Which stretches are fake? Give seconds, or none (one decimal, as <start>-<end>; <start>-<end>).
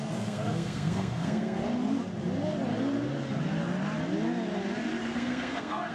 0.0-1.6; 5.0-5.9